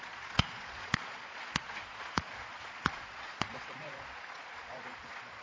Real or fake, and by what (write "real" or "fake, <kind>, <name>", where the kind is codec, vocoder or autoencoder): fake, vocoder, Vocos